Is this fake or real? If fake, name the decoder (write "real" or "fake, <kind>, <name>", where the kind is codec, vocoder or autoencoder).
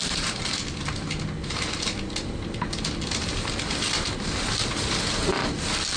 real